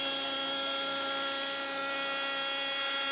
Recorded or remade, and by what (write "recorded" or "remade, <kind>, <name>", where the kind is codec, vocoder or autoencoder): recorded